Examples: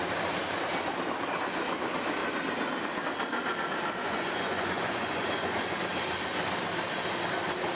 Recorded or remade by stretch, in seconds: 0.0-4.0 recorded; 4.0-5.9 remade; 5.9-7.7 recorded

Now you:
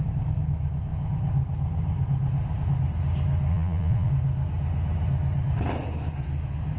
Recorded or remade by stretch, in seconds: 0.0-3.5 recorded; 3.5-4.1 remade; 4.1-6.8 recorded

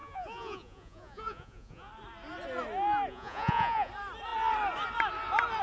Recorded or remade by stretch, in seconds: 0.0-1.9 remade; 1.9-3.1 recorded; 3.1-3.9 remade; 3.9-5.6 recorded

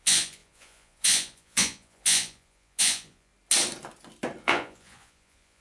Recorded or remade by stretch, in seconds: 0.0-3.3 remade; 3.3-4.4 recorded; 4.4-5.6 remade